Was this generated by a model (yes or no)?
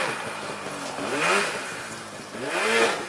no